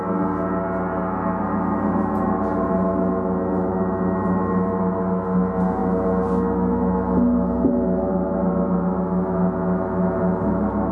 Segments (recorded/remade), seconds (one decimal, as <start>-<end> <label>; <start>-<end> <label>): 0.0-10.9 recorded